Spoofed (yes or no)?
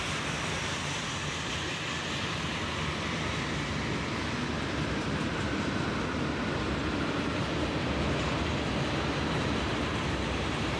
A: no